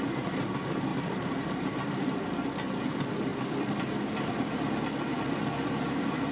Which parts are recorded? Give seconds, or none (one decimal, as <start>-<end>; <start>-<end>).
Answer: 0.0-0.9; 2.2-6.3